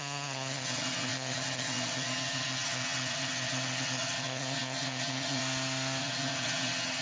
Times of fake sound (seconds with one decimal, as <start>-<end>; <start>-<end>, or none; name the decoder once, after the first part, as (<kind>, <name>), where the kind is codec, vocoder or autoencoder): 0.0-5.4 (vocoder, HiFi-GAN); 6.0-7.0